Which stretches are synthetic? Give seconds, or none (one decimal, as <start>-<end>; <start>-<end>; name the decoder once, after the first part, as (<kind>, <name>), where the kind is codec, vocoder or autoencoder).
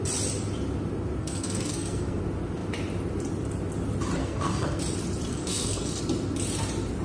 1.2-2.2 (codec, SNAC); 4.2-4.8; 5.3-6.0